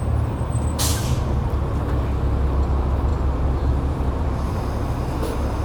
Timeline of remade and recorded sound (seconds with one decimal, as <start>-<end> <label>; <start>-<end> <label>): 0.0-3.1 recorded; 3.1-4.6 remade; 4.6-5.6 recorded